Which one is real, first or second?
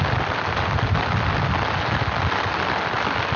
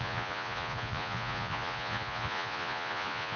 first